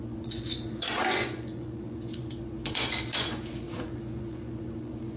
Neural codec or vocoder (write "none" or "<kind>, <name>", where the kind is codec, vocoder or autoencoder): vocoder, Vocos